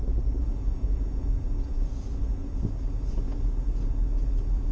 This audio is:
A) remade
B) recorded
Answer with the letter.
A